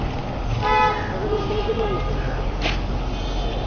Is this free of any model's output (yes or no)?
yes